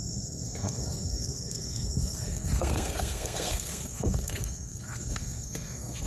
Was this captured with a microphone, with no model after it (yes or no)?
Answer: no